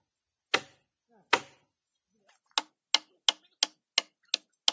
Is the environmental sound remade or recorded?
recorded